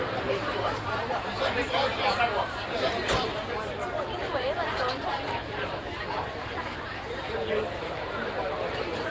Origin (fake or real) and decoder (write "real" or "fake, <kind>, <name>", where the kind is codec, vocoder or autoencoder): fake, vocoder, BigVGAN v2